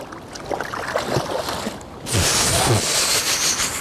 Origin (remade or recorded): recorded